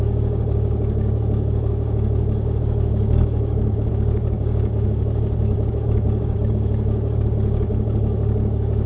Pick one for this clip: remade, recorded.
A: remade